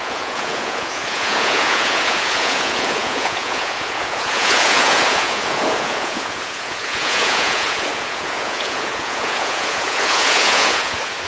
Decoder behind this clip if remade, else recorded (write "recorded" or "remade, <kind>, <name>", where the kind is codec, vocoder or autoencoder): remade, vocoder, Vocos